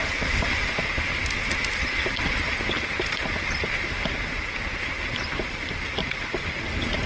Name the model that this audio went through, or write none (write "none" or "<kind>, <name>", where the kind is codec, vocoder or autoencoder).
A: none